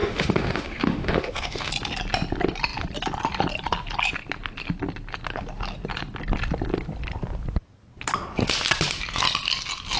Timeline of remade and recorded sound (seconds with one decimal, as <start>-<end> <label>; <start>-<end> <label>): 0.0-1.7 remade; 1.7-10.0 recorded